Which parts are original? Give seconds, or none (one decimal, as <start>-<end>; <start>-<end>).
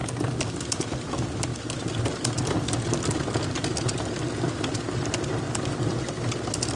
0.0-6.8